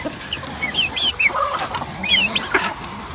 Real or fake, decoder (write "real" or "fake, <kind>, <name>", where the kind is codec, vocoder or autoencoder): real